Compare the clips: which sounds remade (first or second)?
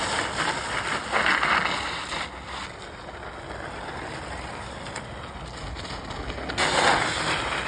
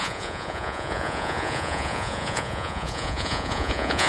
second